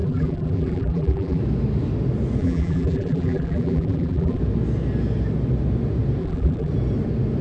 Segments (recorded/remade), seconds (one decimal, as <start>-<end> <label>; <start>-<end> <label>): 0.0-1.4 remade; 1.4-2.4 recorded; 2.4-4.4 remade; 4.4-6.2 recorded; 6.2-6.7 remade; 6.7-7.4 recorded